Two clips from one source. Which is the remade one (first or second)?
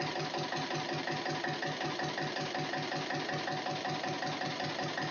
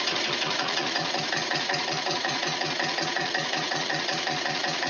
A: second